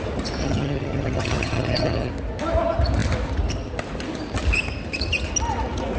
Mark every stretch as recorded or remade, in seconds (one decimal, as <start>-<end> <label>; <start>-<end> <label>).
0.0-0.4 recorded; 0.4-2.1 remade; 2.1-6.0 recorded